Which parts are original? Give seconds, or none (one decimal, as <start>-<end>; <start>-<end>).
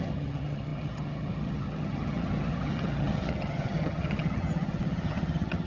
none